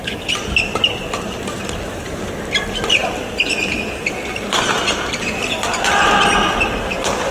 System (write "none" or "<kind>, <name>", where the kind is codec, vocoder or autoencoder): none